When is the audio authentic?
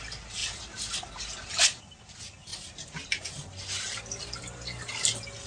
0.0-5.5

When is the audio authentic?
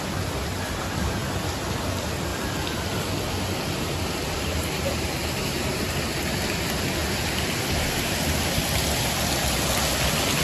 0.0-4.3; 5.8-10.4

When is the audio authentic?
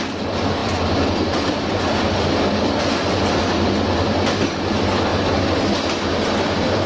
0.0-0.6; 2.8-6.9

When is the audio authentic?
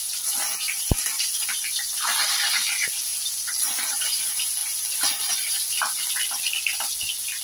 0.0-3.1; 4.1-7.4